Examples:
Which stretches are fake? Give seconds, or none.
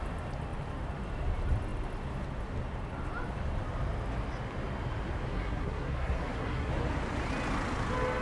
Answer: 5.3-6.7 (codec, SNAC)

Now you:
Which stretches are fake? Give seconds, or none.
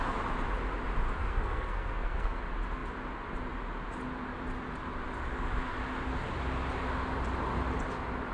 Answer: 1.2-2.4 (codec, SNAC)